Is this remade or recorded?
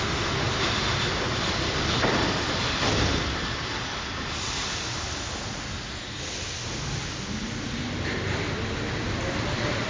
recorded